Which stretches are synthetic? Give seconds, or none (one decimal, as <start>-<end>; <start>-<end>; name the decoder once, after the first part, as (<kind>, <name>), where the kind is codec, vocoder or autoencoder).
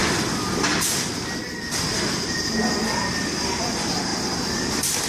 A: none